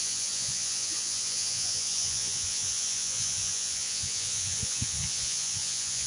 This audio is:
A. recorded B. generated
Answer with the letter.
B